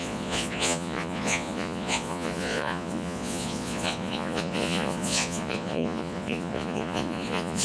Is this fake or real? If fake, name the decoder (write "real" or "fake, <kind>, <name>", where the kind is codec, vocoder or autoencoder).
fake, vocoder, Vocos